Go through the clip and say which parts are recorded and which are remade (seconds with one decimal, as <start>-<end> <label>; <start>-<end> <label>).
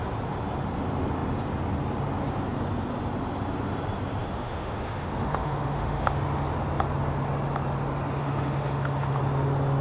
0.0-4.2 recorded; 4.2-6.2 remade; 6.2-8.2 recorded; 8.2-9.2 remade; 9.2-9.8 recorded